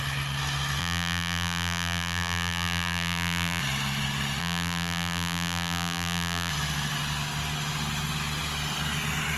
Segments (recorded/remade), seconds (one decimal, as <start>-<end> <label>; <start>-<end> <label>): 0.0-0.8 recorded; 0.8-3.6 remade; 3.6-4.4 recorded; 4.4-6.5 remade; 6.5-9.4 recorded